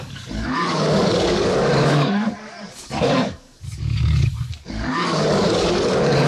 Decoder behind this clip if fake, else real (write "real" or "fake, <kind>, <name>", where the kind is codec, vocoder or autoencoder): fake, codec, DAC